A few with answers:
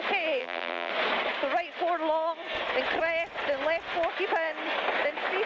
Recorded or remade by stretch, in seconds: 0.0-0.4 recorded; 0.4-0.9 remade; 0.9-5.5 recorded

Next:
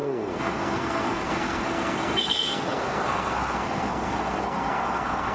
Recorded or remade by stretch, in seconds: 0.0-5.3 remade

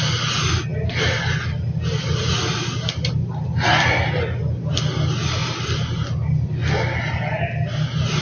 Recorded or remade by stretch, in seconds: 0.0-8.2 recorded

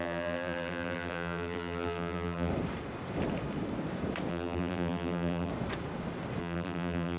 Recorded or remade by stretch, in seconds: 0.0-2.5 remade; 2.5-4.3 recorded; 4.3-5.5 remade; 5.5-6.4 recorded; 6.4-7.2 remade

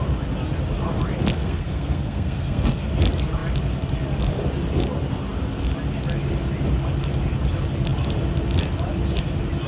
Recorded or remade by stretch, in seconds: 0.0-1.3 recorded; 1.3-2.9 remade; 2.9-9.7 recorded

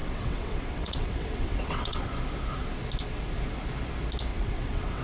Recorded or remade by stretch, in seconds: 0.0-2.1 remade; 2.1-4.3 recorded; 4.3-5.0 remade